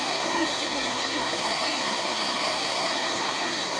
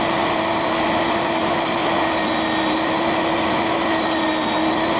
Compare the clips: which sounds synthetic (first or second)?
first